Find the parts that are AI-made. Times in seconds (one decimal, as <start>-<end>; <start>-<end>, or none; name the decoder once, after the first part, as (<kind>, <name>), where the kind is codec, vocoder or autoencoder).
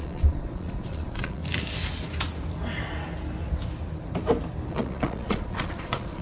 0.0-1.4 (vocoder, Vocos); 4.7-6.2